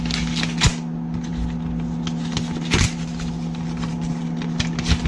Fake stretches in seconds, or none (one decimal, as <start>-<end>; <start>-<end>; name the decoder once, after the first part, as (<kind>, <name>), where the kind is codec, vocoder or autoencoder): none